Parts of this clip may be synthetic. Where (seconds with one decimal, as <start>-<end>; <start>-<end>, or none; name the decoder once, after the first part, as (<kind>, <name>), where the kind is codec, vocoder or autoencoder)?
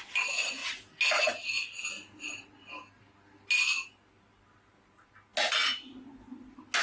none